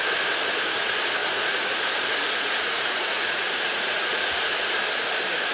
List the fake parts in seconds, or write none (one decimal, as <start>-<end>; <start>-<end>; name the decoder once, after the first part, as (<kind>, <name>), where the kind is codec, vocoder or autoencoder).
1.2-4.5 (vocoder, Vocos)